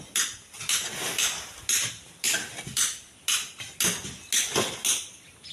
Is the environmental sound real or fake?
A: real